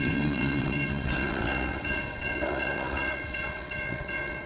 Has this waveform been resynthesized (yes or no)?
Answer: yes